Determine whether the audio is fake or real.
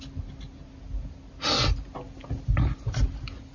real